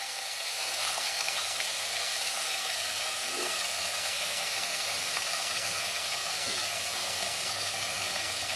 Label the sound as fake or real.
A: fake